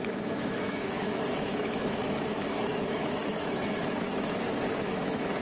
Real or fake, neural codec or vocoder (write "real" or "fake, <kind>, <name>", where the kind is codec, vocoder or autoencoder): fake, autoencoder, DAC-VAE